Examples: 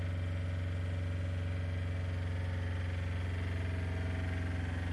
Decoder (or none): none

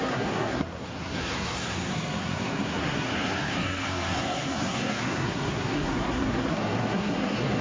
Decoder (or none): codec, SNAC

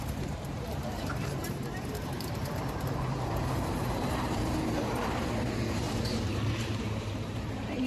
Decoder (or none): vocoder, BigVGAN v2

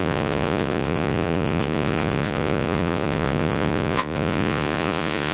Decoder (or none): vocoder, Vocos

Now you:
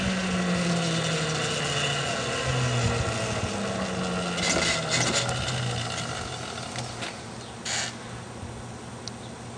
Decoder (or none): none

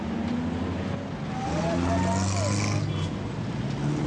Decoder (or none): none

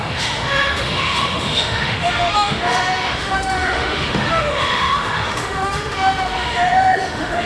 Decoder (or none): autoencoder, DAC-VAE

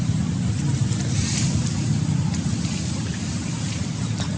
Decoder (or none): none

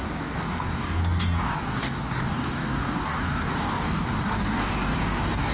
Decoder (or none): codec, DAC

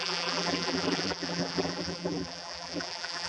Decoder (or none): vocoder, BigVGAN v2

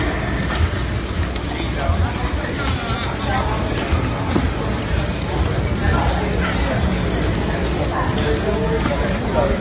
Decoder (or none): none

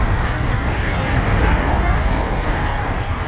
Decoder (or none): codec, DAC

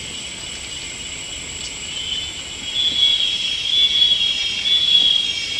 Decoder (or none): none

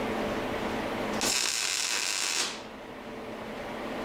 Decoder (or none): none